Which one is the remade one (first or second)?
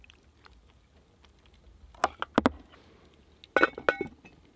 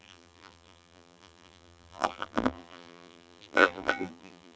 second